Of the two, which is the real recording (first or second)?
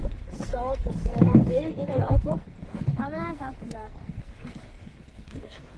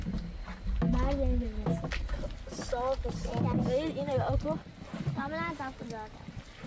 second